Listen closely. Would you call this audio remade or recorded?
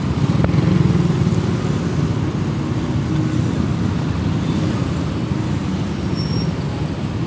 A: recorded